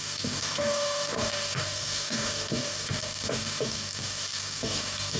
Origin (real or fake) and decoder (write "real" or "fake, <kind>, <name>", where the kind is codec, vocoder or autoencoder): fake, codec, DAC